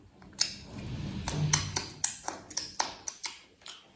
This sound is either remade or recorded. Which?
recorded